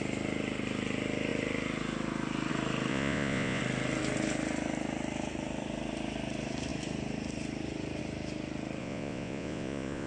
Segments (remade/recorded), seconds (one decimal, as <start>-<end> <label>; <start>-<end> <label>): 0.0-2.9 recorded; 2.9-3.6 remade; 3.6-8.8 recorded; 8.8-10.1 remade